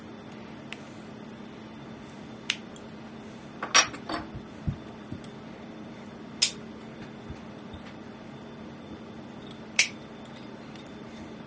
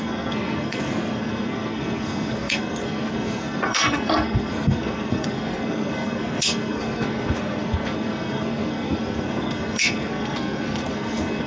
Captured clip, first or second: first